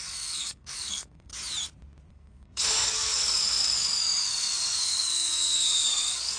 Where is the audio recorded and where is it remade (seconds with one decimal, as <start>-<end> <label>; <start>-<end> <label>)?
0.0-1.3 remade; 1.3-2.1 recorded; 2.1-6.4 remade